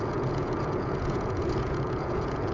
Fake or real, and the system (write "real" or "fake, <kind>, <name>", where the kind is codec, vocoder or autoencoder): fake, vocoder, Vocos